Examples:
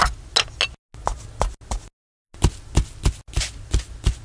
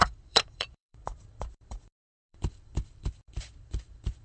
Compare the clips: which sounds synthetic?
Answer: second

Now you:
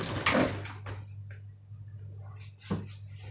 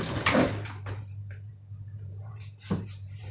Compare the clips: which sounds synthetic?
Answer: second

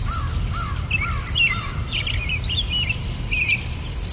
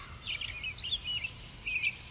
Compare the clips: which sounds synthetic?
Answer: first